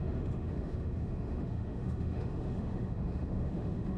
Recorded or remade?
remade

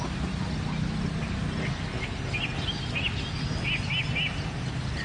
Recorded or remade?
recorded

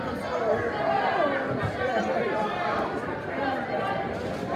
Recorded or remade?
recorded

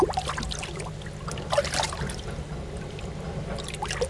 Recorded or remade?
recorded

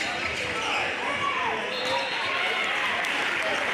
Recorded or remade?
recorded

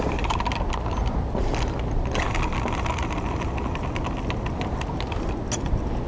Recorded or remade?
recorded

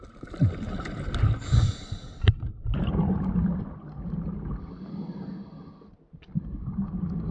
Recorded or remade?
recorded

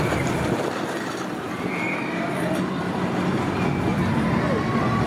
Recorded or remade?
remade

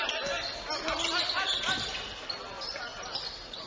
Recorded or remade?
recorded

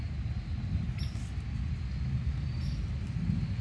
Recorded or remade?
recorded